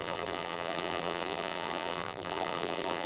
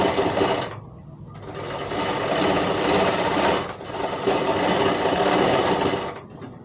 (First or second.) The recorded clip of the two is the second